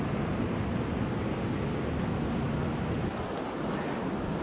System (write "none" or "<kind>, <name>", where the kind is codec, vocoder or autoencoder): none